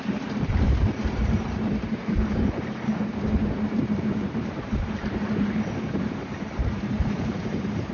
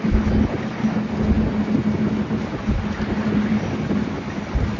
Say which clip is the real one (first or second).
second